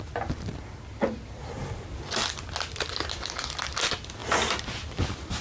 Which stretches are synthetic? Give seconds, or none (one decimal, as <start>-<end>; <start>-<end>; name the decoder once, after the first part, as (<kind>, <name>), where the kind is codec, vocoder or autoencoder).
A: none

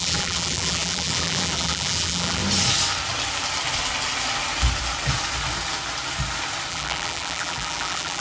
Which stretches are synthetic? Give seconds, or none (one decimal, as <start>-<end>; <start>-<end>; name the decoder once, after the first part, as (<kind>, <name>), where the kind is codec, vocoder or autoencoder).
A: 0.0-2.4 (vocoder, BigVGAN v2); 6.7-8.2

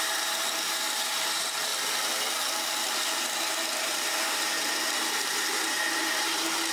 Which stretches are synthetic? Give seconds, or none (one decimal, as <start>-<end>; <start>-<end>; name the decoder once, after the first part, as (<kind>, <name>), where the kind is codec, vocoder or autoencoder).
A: 0.0-1.7 (vocoder, BigVGAN v2); 3.8-6.7

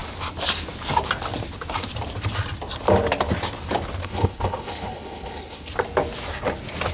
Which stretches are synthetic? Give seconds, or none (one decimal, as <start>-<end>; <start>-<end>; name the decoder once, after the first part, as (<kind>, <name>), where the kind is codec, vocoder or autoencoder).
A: 4.0-5.7 (codec, HILCodec)

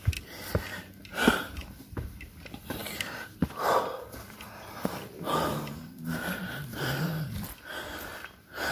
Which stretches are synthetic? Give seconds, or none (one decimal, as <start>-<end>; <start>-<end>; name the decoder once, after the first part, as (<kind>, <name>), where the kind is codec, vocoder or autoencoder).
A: none

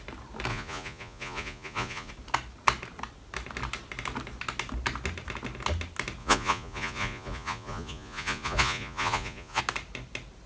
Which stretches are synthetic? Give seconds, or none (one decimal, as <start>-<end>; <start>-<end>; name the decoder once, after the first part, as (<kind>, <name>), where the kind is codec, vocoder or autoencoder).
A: 0.5-2.1 (vocoder, Vocos); 6.2-9.6

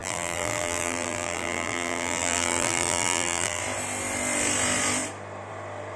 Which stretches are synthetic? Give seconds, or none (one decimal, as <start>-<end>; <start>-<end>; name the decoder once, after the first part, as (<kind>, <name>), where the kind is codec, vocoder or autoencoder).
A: 0.0-3.6 (vocoder, BigVGAN v2)